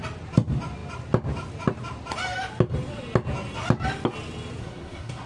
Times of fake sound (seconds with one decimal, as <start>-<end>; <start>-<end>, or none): 4.6-5.3